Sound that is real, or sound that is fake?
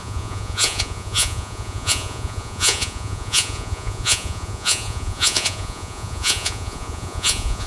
fake